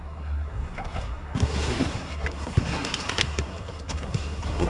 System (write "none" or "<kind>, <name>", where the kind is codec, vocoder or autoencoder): codec, SNAC